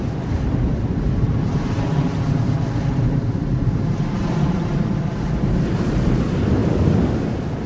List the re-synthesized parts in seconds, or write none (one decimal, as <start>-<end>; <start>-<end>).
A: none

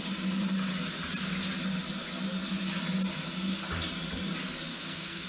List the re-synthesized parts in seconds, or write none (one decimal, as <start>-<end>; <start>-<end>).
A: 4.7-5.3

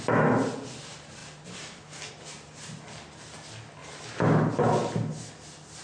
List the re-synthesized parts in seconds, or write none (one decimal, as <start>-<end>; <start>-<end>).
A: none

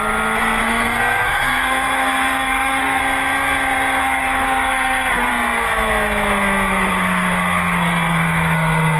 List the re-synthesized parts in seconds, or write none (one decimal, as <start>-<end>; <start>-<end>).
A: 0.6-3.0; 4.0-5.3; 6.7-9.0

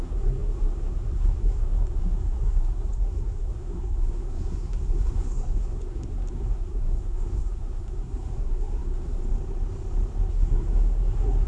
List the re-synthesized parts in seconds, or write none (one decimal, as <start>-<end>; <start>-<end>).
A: 0.0-9.2; 10.3-11.5

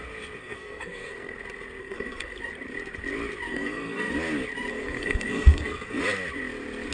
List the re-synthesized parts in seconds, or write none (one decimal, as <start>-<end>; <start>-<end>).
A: 0.4-1.3; 1.8-2.4; 3.5-4.1; 4.7-6.0

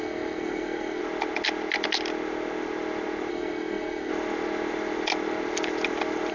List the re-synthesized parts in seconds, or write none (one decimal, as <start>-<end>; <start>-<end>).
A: 0.0-1.0; 3.3-4.1